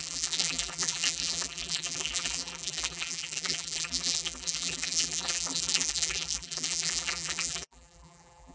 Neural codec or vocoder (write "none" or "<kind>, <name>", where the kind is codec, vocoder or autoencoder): vocoder, BigVGAN v2